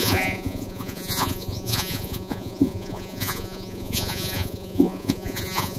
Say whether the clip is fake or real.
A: fake